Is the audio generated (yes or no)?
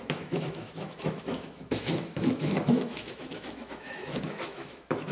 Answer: yes